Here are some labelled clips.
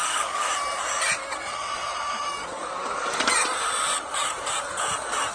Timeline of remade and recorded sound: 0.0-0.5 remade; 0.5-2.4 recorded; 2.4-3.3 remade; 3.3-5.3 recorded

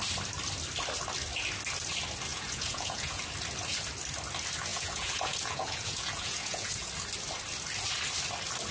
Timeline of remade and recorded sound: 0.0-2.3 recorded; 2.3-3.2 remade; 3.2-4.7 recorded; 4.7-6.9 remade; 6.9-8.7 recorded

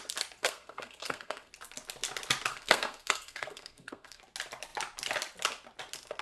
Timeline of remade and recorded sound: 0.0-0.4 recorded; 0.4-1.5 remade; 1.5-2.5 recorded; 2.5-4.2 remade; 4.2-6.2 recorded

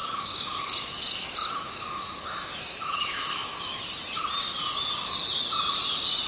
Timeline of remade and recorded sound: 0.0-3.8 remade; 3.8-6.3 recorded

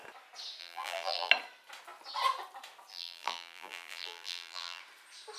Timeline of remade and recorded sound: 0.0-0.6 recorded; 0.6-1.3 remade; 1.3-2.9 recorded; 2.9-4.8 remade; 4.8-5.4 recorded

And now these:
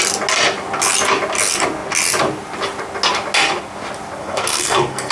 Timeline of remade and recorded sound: 0.0-4.2 recorded; 4.2-5.1 remade